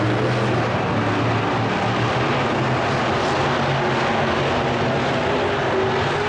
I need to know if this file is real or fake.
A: real